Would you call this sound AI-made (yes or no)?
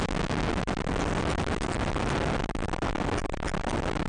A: no